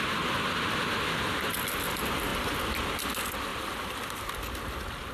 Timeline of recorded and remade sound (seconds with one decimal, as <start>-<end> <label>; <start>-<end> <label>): 0.0-5.1 recorded